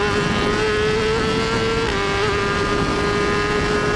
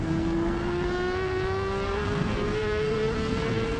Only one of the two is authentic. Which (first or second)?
first